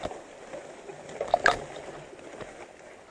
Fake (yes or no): no